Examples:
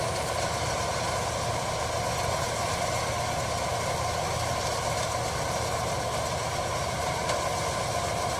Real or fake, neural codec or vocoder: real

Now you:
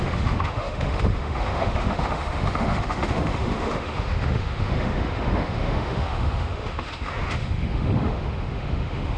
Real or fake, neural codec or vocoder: fake, autoencoder, DAC-VAE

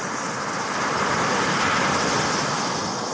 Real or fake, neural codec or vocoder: real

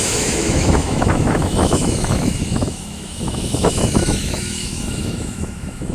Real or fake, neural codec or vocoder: fake, autoencoder, DAC-VAE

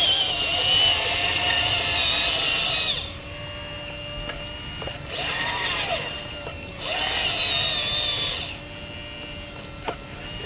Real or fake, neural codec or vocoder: real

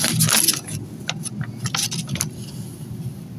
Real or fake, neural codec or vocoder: real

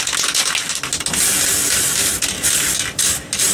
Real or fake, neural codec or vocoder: real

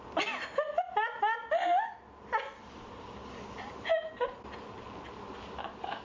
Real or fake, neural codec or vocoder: real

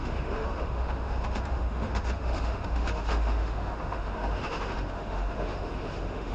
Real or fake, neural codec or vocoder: fake, autoencoder, DAC-VAE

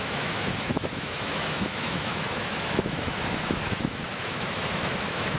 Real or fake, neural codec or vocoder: fake, autoencoder, DAC-VAE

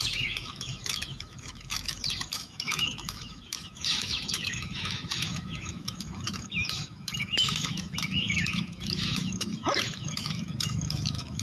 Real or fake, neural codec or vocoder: fake, autoencoder, DAC-VAE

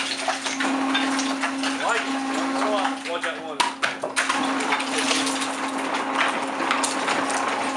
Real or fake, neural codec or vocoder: real